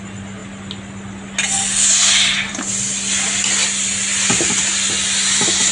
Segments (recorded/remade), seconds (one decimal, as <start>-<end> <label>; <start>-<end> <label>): 0.0-5.7 recorded